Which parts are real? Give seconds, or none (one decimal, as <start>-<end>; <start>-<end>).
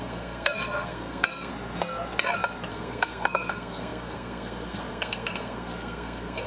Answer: 1.5-2.7